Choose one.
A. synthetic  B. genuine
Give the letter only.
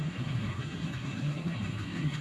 A